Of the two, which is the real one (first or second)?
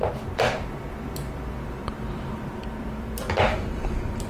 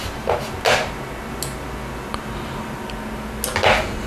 second